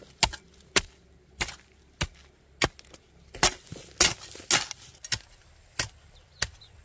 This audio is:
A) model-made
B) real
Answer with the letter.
B